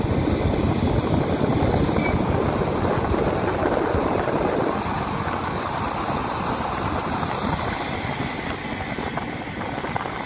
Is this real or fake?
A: real